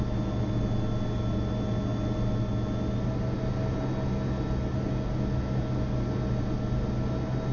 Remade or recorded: recorded